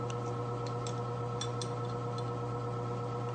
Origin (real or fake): real